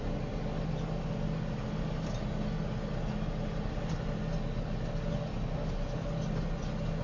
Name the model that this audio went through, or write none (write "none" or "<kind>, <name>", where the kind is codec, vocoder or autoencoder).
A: none